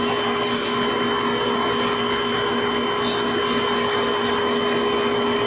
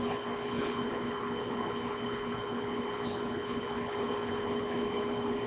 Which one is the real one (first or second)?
first